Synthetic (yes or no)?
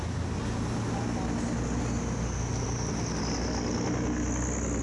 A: no